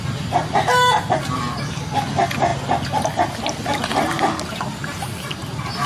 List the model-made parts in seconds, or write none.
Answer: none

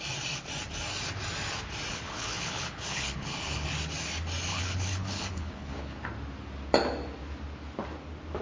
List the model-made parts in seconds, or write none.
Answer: 1.9-3.7 (codec, HILCodec); 4.5-6.0

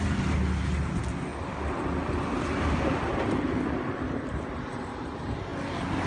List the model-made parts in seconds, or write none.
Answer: none

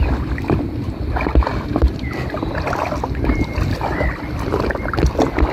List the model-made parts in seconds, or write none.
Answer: 1.5-4.5 (vocoder, BigVGAN v2)

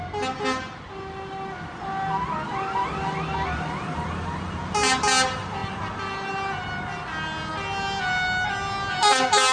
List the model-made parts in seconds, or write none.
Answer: none

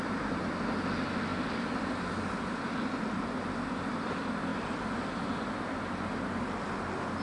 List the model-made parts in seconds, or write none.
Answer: none

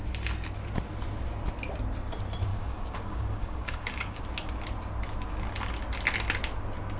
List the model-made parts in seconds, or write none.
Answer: 2.5-4.2 (codec, DAC)

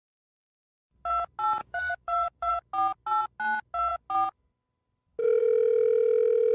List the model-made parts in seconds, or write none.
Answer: 1.6-2.5 (codec, DAC)